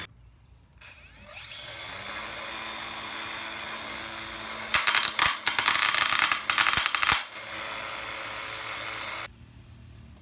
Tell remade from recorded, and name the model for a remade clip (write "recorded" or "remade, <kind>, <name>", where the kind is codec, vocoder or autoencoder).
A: recorded